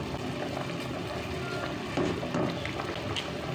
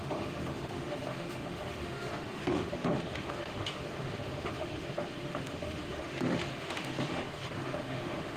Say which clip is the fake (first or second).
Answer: second